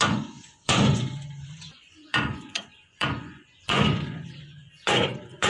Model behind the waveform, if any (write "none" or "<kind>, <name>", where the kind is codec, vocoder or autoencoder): vocoder, Vocos